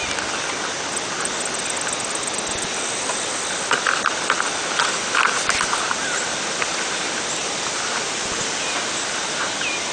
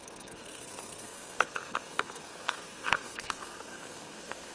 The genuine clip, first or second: first